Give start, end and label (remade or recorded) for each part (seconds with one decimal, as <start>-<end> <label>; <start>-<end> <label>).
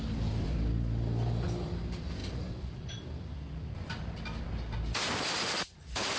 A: 0.0-6.2 recorded